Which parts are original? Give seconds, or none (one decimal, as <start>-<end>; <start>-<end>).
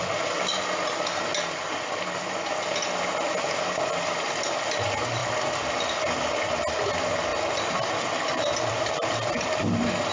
0.0-10.1